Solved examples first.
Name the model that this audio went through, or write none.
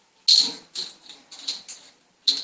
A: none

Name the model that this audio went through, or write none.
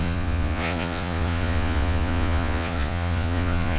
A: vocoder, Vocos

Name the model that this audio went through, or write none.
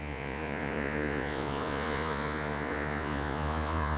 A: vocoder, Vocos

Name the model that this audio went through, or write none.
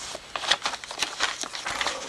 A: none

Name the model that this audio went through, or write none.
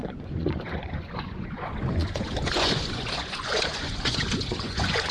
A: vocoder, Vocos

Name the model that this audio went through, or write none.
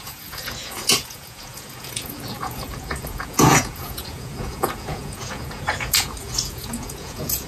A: vocoder, Vocos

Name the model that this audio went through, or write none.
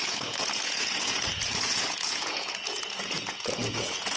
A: vocoder, Vocos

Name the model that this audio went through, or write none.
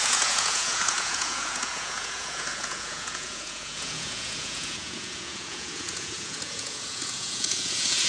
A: vocoder, Vocos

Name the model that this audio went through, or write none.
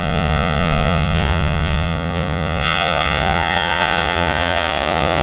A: vocoder, Vocos